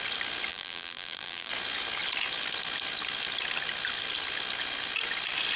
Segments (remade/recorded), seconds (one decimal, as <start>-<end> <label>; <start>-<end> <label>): 0.0-0.5 recorded; 0.5-1.5 remade; 1.5-5.6 recorded